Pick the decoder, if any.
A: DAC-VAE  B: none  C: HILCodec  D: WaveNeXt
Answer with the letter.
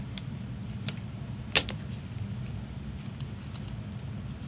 B